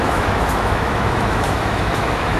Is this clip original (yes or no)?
no